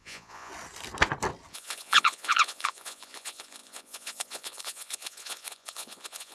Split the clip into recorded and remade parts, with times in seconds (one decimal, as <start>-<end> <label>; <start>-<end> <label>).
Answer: 0.0-0.5 remade; 0.5-1.5 recorded; 1.5-6.3 remade